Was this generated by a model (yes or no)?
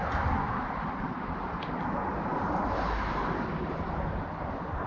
no